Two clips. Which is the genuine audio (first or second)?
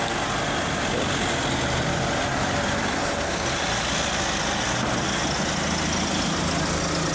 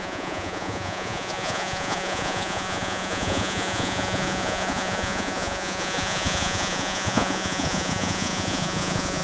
first